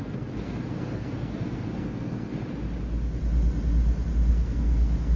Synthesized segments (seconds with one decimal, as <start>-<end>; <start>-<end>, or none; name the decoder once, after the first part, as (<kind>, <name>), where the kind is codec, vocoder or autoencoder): 0.0-2.4 (codec, SNAC); 4.3-5.2